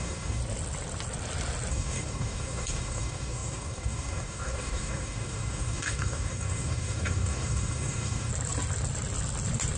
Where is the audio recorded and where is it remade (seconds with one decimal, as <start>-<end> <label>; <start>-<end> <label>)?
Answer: 0.0-0.4 remade; 0.4-1.7 recorded; 1.7-8.3 remade; 8.3-9.8 recorded